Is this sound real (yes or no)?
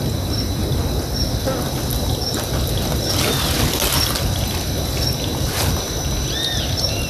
yes